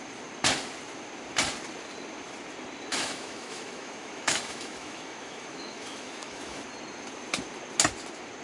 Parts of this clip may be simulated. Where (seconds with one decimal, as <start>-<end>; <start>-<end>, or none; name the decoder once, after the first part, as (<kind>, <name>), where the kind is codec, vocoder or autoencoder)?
2.9-6.6 (autoencoder, DAC-VAE)